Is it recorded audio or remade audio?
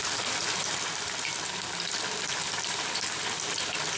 remade